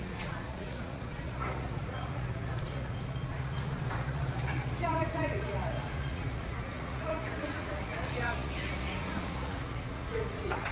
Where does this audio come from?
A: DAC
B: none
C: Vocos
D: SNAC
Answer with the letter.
C